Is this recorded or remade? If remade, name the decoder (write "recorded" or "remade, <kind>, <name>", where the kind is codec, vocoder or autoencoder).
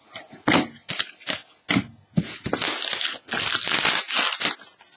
recorded